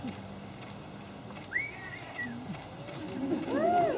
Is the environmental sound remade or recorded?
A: recorded